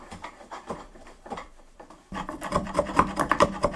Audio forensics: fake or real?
fake